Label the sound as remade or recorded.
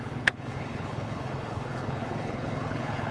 remade